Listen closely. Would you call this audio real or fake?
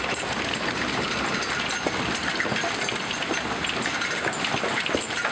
real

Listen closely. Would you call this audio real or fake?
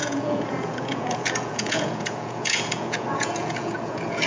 fake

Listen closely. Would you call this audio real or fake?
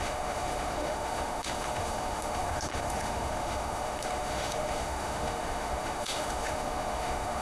fake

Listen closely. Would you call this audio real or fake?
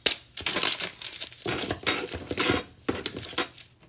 real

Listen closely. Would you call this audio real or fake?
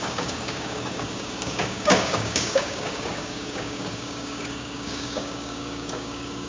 fake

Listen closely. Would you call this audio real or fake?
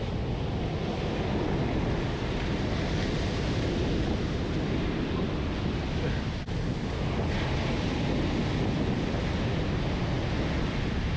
real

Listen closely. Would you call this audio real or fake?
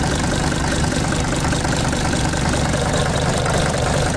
fake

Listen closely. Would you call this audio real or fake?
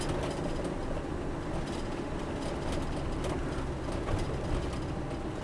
real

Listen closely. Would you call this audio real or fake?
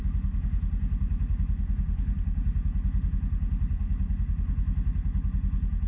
real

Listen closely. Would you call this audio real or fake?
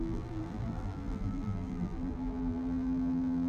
fake